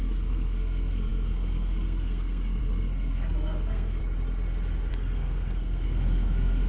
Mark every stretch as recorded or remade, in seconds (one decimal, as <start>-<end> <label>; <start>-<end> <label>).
0.0-4.0 remade; 4.0-4.9 recorded; 4.9-6.7 remade

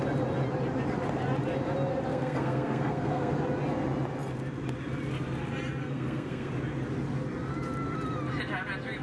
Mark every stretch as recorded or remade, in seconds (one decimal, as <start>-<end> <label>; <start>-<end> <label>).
0.0-2.1 recorded; 2.1-3.3 remade; 3.3-5.8 recorded; 5.8-6.5 remade; 6.5-9.0 recorded

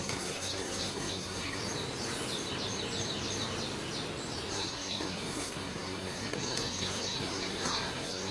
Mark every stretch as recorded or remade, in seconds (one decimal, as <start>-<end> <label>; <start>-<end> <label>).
0.0-1.6 remade; 1.6-4.5 recorded; 4.5-8.3 remade